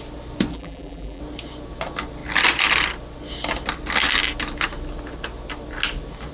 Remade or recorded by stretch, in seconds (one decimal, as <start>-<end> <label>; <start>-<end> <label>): 0.0-0.5 recorded; 0.5-1.2 remade; 1.2-6.3 recorded

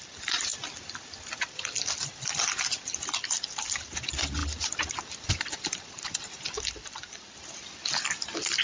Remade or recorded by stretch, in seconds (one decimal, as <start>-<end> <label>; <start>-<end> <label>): 0.0-0.5 remade; 0.5-1.5 recorded; 1.5-8.6 remade

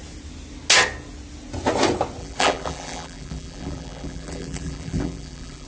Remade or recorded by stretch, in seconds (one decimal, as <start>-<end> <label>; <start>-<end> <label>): 0.0-2.2 recorded; 2.2-5.7 remade

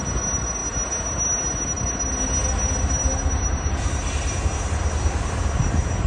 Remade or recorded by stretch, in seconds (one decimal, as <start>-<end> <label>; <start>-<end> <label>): 0.0-0.6 recorded; 0.6-1.5 remade; 1.5-3.0 recorded; 3.0-6.1 remade

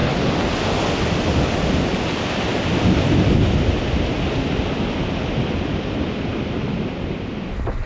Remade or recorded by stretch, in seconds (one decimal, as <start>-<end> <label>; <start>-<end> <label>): 0.0-7.9 recorded

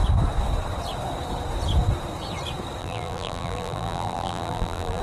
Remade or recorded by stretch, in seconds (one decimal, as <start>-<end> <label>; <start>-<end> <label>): 0.0-2.8 recorded; 2.8-5.0 remade